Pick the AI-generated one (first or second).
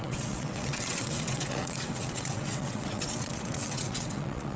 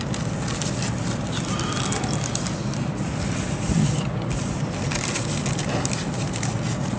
first